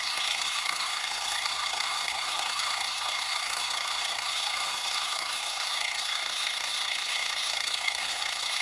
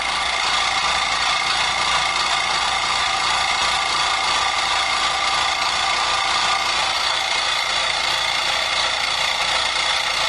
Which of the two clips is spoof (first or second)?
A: first